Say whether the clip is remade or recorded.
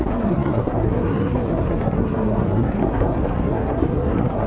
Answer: remade